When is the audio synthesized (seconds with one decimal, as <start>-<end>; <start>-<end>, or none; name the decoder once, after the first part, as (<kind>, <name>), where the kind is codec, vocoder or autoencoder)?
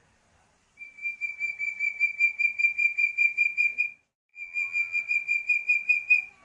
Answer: 4.3-5.0 (vocoder, BigVGAN v2)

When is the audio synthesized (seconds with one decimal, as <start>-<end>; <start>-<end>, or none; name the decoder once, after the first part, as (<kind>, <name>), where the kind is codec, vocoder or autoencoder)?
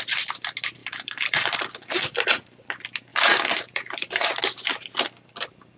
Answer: 0.8-1.6 (vocoder, BigVGAN v2); 3.1-4.4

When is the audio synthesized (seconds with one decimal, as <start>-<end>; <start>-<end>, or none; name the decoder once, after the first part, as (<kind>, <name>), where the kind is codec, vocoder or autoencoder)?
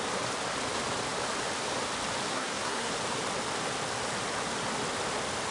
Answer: 2.3-2.9 (codec, SNAC)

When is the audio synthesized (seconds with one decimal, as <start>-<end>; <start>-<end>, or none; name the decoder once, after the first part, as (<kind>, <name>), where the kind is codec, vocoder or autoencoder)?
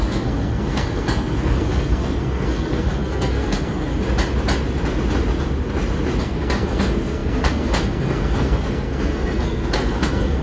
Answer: 0.0-3.9 (codec, SNAC); 6.2-10.4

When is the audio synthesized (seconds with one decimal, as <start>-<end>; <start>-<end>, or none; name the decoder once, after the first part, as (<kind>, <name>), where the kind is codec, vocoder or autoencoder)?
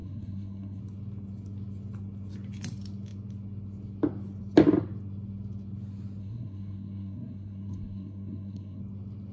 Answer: 0.0-0.8 (codec, SNAC); 6.2-8.8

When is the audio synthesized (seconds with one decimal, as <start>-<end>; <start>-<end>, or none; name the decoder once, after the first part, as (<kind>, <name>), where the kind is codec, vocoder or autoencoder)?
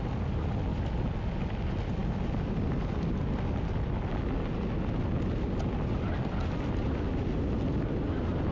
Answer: none